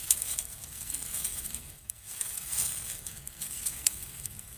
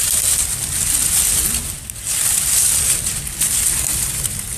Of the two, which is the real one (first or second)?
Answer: second